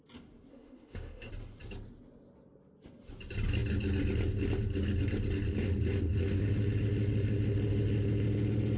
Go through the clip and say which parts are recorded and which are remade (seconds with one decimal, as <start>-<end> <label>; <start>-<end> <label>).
0.0-0.5 recorded; 0.5-1.3 remade; 1.3-8.8 recorded